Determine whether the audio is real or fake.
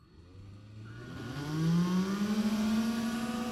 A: real